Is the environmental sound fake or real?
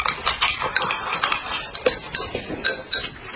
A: fake